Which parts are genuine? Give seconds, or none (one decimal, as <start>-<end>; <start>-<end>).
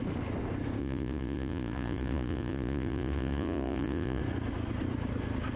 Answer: 0.0-0.8; 4.2-5.6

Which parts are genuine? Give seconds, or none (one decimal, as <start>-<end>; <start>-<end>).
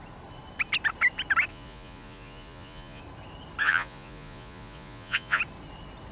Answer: 0.0-1.5; 3.0-3.6; 5.4-6.1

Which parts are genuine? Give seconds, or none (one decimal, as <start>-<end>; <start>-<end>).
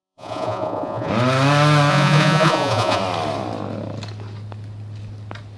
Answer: 1.1-1.9; 3.0-5.6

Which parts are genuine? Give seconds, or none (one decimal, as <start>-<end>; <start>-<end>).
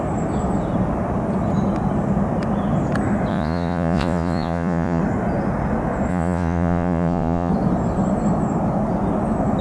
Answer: 0.0-3.3; 5.0-6.1; 7.5-9.6